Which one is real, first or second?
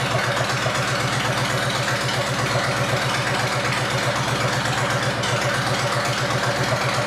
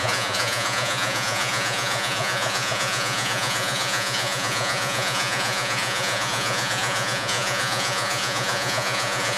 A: first